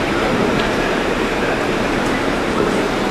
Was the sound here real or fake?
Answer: fake